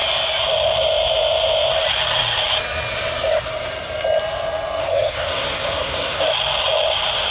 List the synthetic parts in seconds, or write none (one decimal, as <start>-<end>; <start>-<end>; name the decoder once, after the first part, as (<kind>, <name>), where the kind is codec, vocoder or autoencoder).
4.8-6.2 (codec, SNAC)

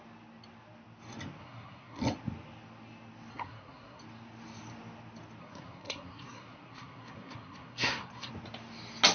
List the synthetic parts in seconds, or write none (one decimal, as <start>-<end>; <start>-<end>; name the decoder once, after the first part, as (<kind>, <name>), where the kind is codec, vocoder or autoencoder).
1.4-2.0 (codec, SNAC); 3.3-4.0; 5.4-8.3

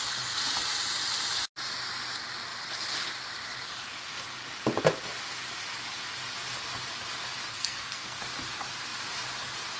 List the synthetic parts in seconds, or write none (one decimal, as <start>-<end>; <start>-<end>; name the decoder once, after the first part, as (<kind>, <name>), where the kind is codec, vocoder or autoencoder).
7.5-8.2 (codec, SNAC)

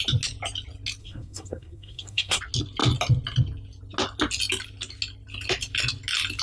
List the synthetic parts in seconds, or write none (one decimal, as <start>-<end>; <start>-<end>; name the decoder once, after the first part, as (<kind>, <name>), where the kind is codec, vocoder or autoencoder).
1.0-2.4 (codec, SNAC)

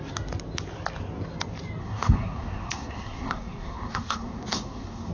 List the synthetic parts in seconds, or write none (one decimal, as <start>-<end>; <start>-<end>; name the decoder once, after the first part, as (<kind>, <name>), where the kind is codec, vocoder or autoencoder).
1.8-5.1 (codec, SNAC)

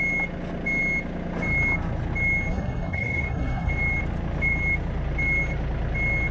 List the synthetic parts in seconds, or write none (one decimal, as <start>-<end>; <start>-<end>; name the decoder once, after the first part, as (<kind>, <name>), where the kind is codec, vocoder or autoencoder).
2.5-3.7 (codec, SNAC)

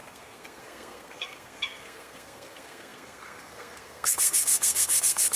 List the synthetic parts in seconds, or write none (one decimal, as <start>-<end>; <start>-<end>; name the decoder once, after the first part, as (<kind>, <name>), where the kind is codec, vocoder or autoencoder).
0.0-5.4 (codec, SNAC)